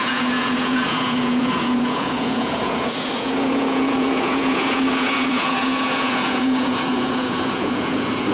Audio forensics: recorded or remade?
remade